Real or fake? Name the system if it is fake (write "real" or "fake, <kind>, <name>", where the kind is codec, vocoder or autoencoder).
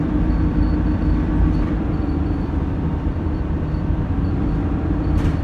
fake, vocoder, BigVGAN v2